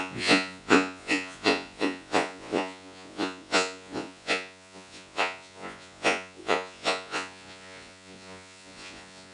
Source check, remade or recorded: remade